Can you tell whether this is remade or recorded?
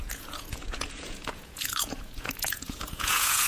remade